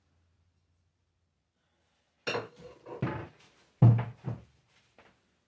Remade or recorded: recorded